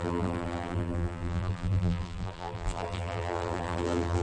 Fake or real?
fake